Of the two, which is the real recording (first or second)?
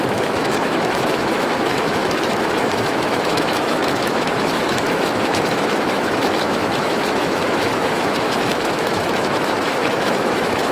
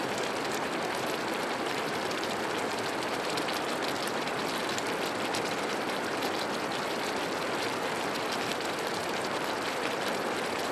second